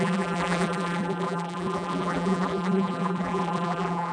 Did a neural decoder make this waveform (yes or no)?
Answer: yes